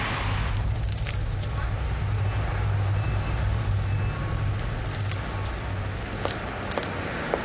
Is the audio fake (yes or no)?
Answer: no